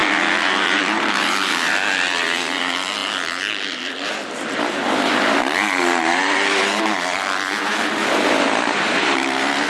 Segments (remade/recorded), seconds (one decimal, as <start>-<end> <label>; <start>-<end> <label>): 0.0-0.8 recorded; 0.8-9.7 remade